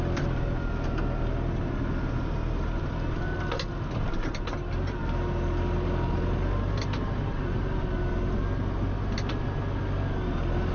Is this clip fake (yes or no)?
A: no